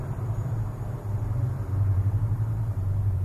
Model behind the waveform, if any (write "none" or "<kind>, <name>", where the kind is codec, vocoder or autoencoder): vocoder, BigVGAN v2